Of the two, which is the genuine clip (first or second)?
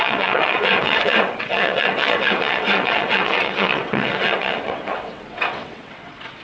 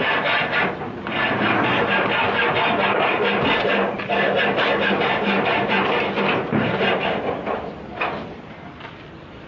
second